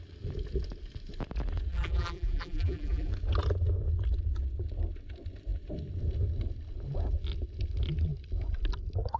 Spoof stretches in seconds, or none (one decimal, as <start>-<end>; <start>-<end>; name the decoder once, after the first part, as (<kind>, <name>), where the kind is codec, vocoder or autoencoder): 1.7-3.1 (vocoder, BigVGAN v2)